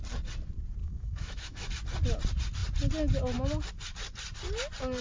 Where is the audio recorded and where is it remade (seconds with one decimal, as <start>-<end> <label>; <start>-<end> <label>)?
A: 0.0-0.8 recorded; 0.8-1.7 remade; 1.7-5.0 recorded